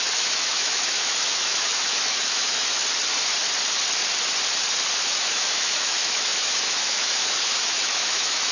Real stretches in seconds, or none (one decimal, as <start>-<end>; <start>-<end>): 2.8-5.1